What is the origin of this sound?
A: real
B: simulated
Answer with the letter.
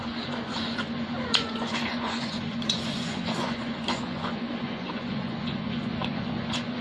B